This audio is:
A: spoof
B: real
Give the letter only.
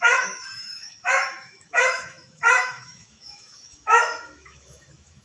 A